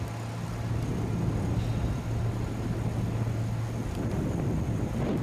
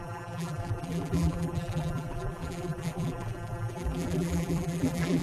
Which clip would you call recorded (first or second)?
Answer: first